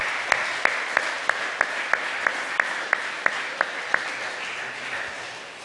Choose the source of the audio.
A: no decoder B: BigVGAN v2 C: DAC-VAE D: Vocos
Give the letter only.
A